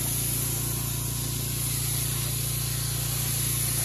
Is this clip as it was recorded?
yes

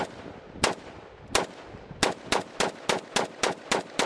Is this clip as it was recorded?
yes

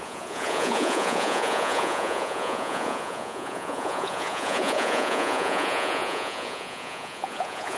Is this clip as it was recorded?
no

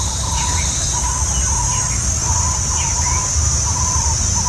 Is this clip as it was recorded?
yes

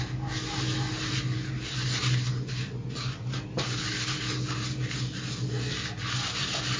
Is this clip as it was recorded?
yes